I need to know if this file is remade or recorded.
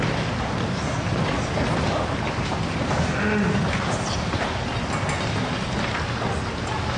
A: recorded